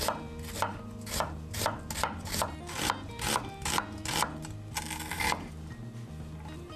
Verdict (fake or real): real